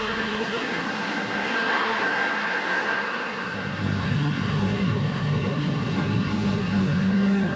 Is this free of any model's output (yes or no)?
no